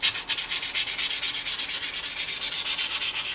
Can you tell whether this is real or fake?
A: real